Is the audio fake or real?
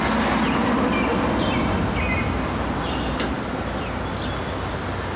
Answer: real